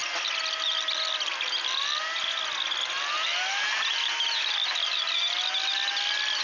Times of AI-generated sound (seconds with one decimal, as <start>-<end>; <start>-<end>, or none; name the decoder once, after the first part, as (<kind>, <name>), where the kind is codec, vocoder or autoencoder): none